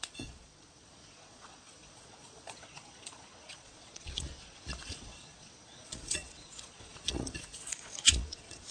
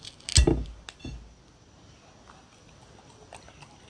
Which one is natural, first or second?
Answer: second